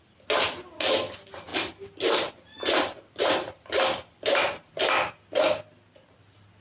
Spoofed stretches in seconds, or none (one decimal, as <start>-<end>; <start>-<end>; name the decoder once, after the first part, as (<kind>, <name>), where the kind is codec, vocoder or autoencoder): none

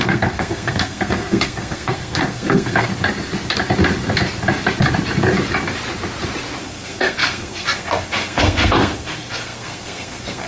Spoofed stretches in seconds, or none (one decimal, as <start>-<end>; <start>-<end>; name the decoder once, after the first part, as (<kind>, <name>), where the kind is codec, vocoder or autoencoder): 0.0-2.9 (codec, SNAC); 6.6-10.5

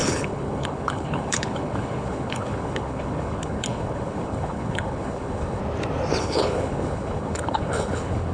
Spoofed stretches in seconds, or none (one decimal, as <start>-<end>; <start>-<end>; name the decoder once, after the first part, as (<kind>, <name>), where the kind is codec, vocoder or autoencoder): 0.0-5.6 (codec, HILCodec); 6.2-8.3

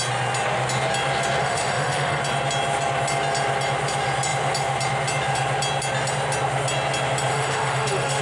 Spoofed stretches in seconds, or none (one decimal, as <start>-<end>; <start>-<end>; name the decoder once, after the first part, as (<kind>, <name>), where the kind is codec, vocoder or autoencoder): 1.4-2.2 (autoencoder, DAC-VAE); 7.3-8.2

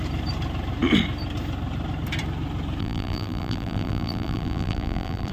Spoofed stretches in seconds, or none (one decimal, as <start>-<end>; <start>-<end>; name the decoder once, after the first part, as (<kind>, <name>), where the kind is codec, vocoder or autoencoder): 2.8-5.3 (vocoder, BigVGAN v2)

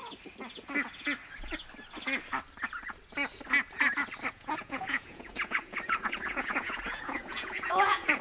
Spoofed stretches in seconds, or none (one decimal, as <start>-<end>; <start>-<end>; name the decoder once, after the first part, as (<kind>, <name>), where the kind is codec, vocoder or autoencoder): 4.3-8.2 (vocoder, Vocos)